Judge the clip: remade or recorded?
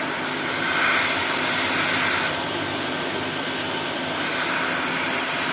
recorded